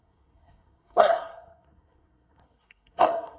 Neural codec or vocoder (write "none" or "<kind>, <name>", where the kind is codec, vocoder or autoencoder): codec, SNAC